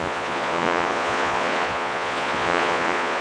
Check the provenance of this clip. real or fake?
fake